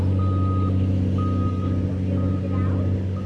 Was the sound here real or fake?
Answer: real